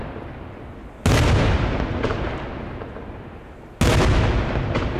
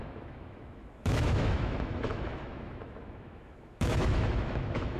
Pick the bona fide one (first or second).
first